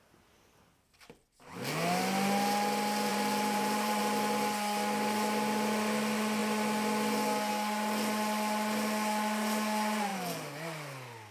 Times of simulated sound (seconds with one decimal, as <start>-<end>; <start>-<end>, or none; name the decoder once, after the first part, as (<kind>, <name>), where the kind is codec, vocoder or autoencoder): 3.1-4.0 (vocoder, BigVGAN v2)